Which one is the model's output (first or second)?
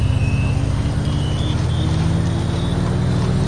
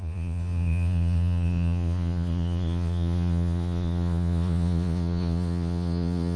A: second